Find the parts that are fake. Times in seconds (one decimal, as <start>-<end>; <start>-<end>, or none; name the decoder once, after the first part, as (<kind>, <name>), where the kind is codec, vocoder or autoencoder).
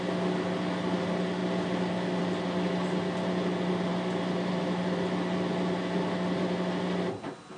none